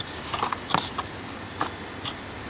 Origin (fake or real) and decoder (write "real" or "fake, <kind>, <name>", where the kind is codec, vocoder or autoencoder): real